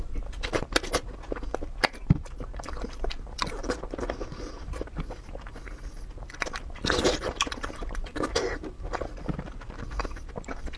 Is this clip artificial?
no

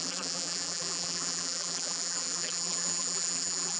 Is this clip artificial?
yes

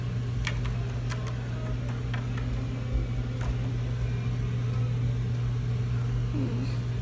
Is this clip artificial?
no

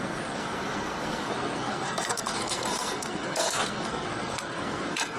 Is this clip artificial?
yes